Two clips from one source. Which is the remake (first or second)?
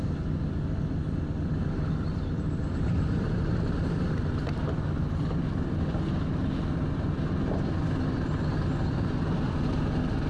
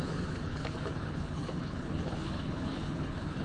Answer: second